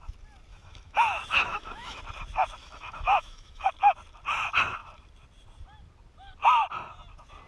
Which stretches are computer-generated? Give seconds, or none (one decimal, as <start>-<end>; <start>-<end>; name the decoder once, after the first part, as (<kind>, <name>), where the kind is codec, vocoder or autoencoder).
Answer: 0.5-2.0 (autoencoder, DAC-VAE); 2.6-3.7